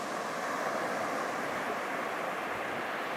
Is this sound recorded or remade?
recorded